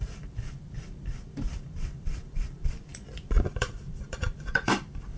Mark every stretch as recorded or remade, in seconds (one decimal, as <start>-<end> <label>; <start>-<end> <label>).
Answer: 0.0-5.2 remade